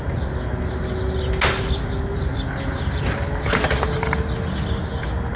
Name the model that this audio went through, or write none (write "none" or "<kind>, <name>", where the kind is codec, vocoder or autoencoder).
none